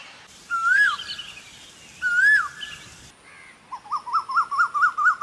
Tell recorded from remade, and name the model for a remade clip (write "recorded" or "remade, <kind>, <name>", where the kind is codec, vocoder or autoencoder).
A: recorded